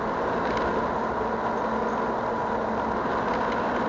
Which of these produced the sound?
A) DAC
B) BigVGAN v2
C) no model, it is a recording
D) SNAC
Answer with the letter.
C